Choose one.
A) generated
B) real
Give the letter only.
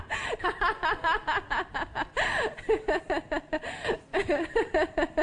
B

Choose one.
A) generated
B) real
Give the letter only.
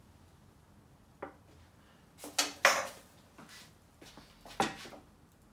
B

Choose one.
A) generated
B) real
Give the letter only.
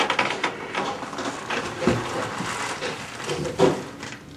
B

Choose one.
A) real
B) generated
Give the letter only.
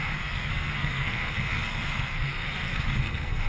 B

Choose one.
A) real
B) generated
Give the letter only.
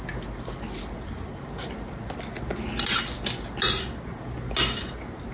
A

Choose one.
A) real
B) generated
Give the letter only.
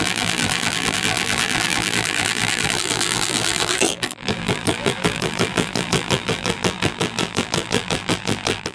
B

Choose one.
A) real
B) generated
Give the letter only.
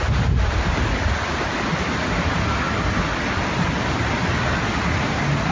A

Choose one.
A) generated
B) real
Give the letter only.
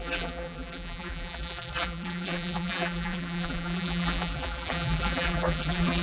A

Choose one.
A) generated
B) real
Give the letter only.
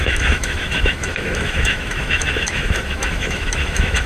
A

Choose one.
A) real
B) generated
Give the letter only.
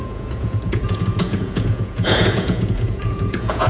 B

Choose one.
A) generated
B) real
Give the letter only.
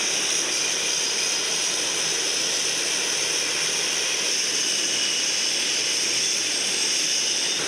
B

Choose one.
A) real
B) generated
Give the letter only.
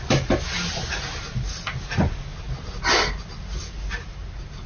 A